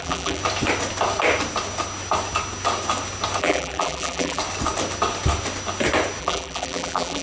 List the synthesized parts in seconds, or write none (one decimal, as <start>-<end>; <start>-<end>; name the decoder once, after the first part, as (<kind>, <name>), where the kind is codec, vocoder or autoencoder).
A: 0.0-0.4 (vocoder, BigVGAN v2); 3.4-4.4; 6.2-7.2